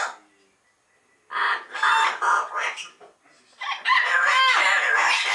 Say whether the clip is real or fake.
real